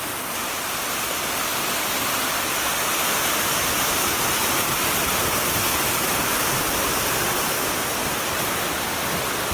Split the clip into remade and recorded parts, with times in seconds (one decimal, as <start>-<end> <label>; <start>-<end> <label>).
0.0-9.5 recorded